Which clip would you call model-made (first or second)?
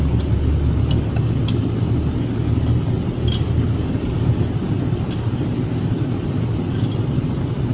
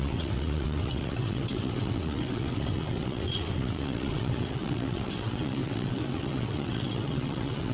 second